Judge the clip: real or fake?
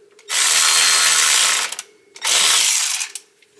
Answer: real